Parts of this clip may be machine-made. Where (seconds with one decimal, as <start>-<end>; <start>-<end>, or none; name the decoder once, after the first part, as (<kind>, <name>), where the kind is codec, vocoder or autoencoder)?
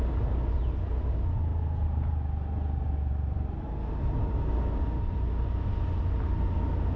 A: none